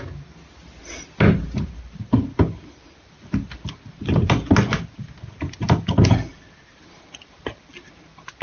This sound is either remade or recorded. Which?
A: recorded